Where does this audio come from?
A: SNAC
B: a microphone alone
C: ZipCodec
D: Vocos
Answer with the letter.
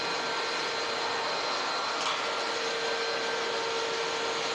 B